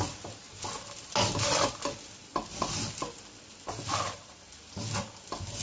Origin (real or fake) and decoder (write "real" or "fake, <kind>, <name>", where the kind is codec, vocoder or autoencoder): real